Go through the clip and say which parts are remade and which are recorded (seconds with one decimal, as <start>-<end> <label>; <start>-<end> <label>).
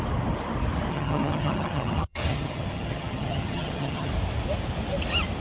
0.0-0.9 recorded; 0.9-4.1 remade; 4.1-5.4 recorded